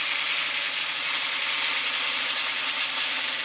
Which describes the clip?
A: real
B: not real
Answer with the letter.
A